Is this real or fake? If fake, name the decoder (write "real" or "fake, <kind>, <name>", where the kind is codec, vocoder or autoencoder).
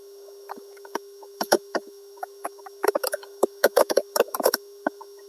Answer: fake, autoencoder, DAC-VAE